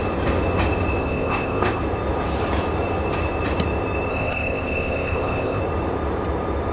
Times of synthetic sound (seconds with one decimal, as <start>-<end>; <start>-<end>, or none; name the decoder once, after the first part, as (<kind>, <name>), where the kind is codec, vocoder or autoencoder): 1.0-1.8 (codec, ZipCodec); 4.1-5.6